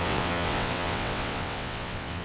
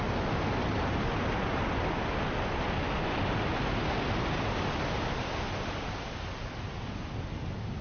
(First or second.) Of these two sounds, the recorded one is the second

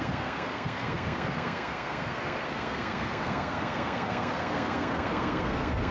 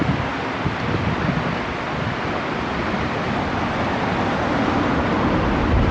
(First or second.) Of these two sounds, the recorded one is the second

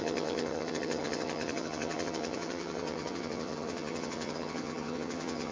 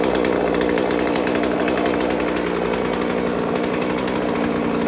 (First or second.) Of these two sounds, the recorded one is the second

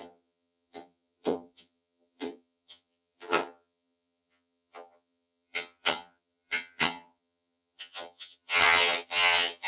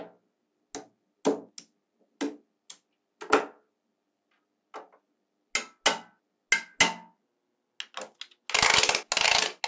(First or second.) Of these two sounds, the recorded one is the second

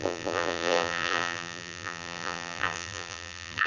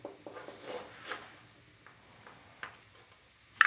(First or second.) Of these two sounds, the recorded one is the second